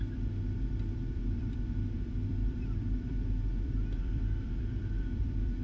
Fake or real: fake